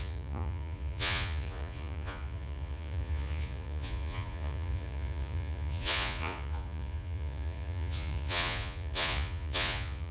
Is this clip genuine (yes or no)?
no